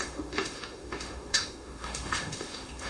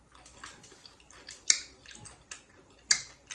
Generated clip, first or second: first